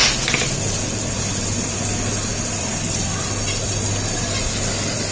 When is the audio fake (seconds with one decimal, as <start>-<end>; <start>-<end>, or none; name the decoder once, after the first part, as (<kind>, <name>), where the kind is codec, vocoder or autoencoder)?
2.3-4.4 (vocoder, BigVGAN v2)